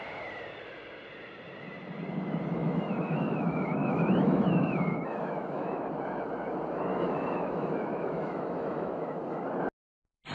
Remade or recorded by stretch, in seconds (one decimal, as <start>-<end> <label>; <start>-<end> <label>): 0.0-2.6 recorded; 2.6-5.9 remade; 5.9-6.9 recorded; 6.9-9.2 remade; 9.2-10.3 recorded